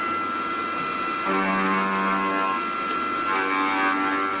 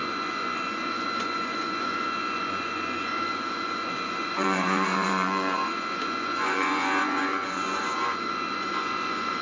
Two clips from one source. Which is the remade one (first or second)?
second